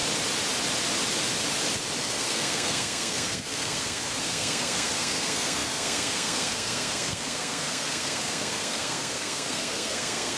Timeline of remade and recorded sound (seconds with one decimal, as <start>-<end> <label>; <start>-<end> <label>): 0.0-2.0 recorded; 2.0-10.4 remade